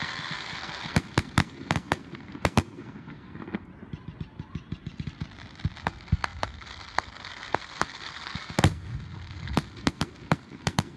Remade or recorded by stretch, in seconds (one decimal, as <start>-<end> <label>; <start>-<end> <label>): 0.0-3.7 remade; 3.7-5.8 recorded; 5.8-11.0 remade